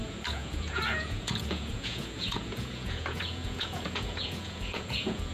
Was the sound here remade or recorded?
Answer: remade